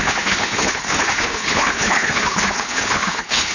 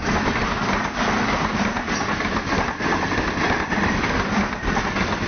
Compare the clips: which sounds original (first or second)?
second